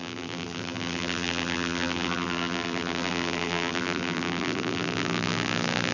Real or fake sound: fake